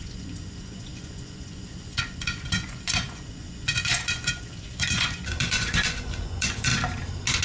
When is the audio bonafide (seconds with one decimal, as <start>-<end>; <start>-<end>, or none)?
6.7-7.4